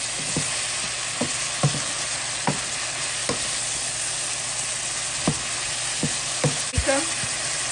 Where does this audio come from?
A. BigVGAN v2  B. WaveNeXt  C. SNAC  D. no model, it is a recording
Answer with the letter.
D